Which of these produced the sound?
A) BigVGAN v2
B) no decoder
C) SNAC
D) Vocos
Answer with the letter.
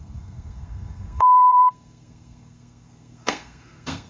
C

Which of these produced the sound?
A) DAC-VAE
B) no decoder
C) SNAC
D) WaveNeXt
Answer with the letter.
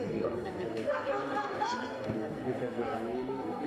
C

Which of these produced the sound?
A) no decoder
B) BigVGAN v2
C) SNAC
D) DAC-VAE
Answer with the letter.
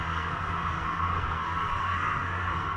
C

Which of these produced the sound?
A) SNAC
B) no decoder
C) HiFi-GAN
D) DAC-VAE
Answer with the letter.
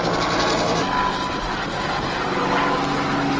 B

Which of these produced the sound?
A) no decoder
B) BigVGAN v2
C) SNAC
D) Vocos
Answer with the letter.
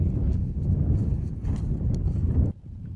A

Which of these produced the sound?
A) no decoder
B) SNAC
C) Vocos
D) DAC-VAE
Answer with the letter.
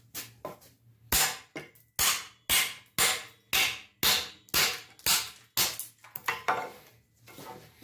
A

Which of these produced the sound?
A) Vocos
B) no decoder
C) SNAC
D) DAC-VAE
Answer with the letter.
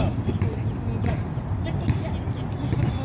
B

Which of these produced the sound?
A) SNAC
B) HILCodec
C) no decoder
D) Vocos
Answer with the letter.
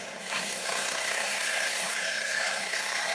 A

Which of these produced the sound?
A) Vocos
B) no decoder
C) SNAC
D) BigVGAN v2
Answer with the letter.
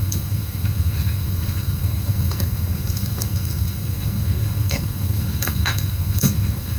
C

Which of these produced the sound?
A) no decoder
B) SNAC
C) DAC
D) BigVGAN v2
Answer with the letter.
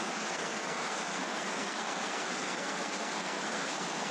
B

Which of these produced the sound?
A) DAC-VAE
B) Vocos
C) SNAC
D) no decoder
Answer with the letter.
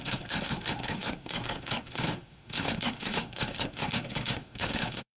C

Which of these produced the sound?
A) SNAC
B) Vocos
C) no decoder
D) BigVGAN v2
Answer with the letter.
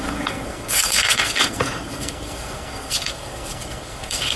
A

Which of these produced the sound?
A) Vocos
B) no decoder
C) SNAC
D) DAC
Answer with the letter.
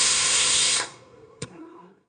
C